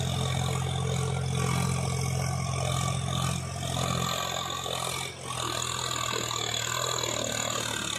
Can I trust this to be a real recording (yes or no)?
yes